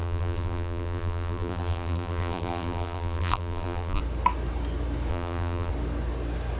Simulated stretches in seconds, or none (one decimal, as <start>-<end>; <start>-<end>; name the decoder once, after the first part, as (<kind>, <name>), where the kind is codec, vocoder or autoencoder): 0.0-4.0 (vocoder, BigVGAN v2); 5.1-5.7